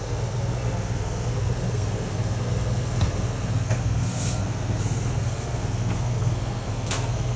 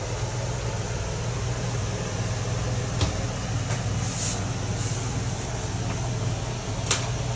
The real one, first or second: second